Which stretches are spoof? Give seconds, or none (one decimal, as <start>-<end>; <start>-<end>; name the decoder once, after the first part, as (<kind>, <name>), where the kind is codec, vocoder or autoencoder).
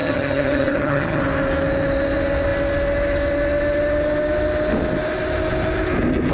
0.0-1.2 (vocoder, HiFi-GAN)